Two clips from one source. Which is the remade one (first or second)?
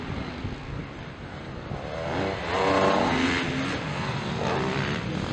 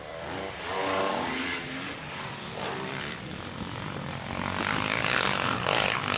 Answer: second